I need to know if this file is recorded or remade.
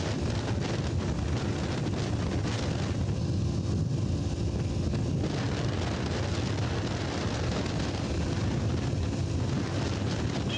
recorded